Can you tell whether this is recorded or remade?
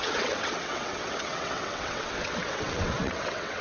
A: remade